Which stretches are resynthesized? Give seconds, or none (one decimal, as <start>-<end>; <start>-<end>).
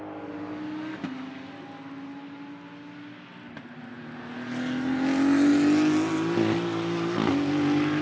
none